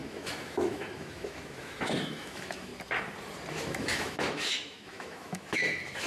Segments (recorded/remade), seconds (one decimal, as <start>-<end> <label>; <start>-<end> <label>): 0.0-2.7 remade; 2.7-3.5 recorded; 3.5-6.1 remade